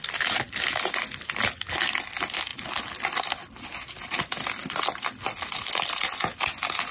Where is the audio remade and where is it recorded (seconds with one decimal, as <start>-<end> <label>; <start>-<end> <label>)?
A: 0.0-6.9 recorded